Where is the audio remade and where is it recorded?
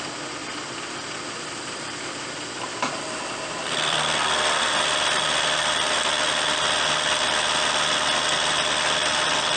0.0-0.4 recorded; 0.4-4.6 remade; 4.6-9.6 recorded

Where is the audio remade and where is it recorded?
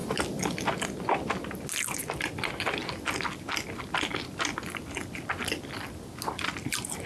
0.0-7.1 recorded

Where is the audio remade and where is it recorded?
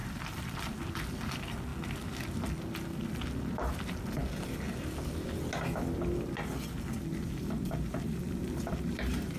0.0-1.7 remade; 1.7-3.4 recorded; 3.4-4.2 remade; 4.2-7.9 recorded; 7.9-9.4 remade